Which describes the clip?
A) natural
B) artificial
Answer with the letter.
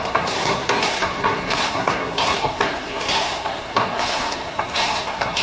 B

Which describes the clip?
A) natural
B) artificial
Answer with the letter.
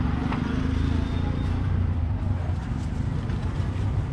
A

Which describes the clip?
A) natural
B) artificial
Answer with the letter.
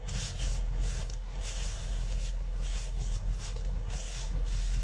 B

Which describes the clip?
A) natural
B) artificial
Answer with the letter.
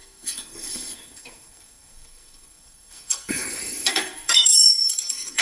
B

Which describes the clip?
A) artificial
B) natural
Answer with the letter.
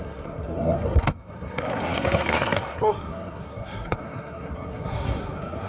A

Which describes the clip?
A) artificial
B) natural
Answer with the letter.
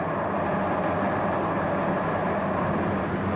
B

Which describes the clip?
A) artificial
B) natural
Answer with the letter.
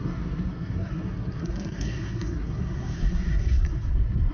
A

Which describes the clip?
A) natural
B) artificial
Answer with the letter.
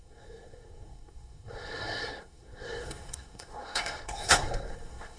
B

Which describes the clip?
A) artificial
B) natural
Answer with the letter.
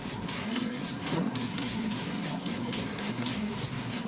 A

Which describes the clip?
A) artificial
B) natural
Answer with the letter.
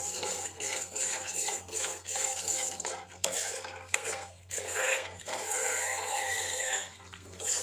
A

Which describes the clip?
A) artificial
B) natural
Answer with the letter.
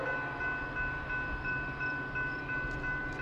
B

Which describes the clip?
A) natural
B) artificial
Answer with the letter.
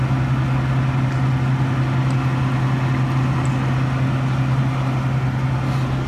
A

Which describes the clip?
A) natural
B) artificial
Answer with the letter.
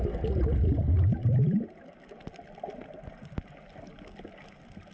A